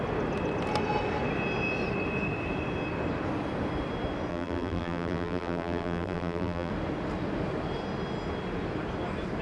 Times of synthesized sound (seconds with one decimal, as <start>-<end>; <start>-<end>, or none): 4.3-6.7